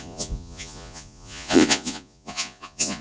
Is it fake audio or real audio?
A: fake